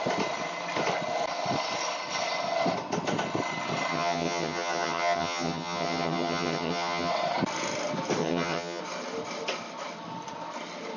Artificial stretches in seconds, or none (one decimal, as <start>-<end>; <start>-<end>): 3.9-7.1; 8.2-8.8